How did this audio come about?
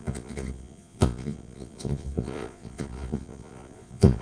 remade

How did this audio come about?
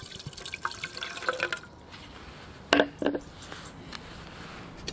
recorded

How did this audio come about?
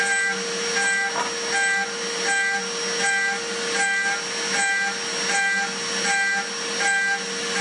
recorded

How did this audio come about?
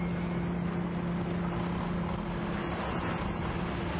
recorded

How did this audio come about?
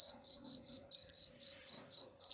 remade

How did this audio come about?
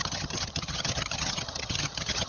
remade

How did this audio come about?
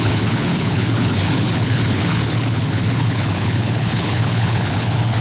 remade